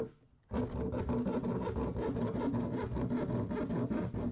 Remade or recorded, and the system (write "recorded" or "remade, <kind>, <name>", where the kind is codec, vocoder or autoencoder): recorded